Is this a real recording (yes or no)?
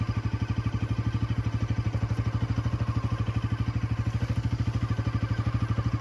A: yes